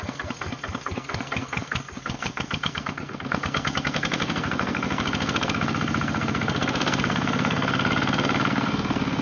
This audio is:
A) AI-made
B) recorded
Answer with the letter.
A